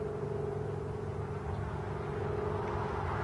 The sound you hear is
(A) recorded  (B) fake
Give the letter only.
A